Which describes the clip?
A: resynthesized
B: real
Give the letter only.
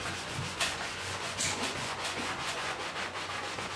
A